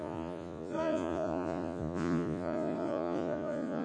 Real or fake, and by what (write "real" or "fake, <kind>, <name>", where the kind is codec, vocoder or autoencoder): fake, vocoder, Vocos